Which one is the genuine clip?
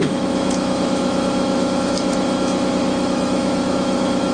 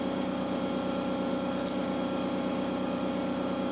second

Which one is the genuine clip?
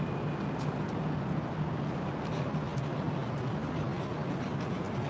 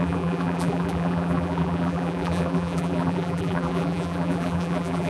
first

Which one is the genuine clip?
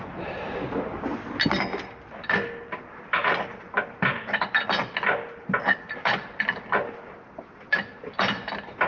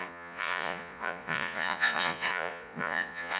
first